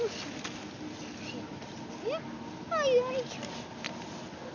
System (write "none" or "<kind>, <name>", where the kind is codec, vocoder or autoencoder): none